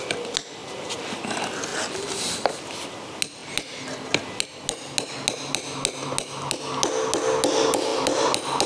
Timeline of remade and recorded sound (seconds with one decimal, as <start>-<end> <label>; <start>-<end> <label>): 0.0-1.7 recorded; 1.7-2.5 remade; 2.5-8.7 recorded